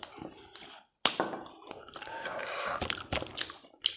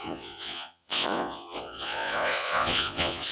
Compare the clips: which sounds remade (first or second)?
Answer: second